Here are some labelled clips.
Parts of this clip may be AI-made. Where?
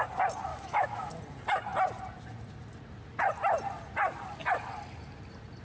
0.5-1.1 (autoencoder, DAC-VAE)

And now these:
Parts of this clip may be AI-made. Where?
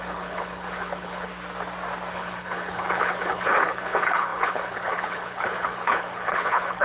0.0-1.3 (codec, HILCodec); 2.1-6.8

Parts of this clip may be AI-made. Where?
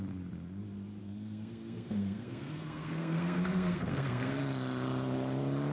1.0-4.4 (codec, SNAC)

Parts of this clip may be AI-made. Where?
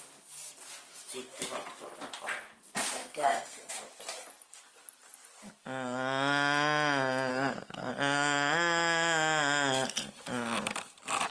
3.0-3.7 (codec, SNAC); 7.3-7.9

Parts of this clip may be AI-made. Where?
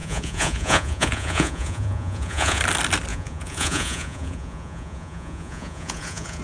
0.0-2.6 (vocoder, Vocos); 3.1-6.4